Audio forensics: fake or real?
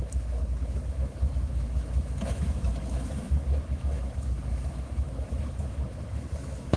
fake